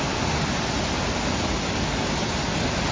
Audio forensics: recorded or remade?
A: recorded